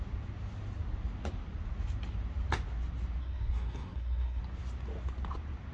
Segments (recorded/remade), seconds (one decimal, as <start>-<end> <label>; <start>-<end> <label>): 0.0-3.2 recorded; 3.2-4.4 remade; 4.4-5.7 recorded